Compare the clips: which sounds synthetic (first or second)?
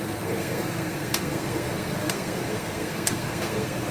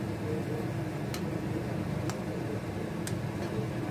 first